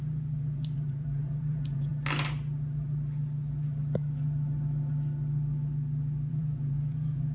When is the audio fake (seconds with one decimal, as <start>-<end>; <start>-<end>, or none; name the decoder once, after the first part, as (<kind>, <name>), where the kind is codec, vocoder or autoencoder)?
0.0-1.9 (vocoder, Vocos); 6.3-7.3